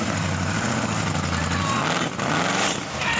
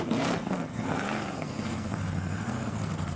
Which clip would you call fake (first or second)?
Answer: second